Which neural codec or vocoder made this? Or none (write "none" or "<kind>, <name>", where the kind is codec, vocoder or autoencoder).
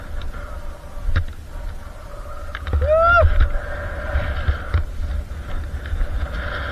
none